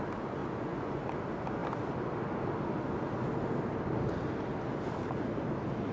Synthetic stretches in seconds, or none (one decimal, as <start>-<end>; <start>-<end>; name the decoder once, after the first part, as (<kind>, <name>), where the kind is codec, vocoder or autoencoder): 0.4-1.0 (vocoder, Vocos)

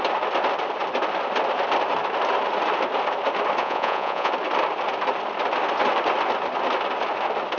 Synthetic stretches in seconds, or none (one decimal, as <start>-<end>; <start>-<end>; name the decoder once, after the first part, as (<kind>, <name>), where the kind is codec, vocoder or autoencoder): 3.6-4.3 (vocoder, Vocos)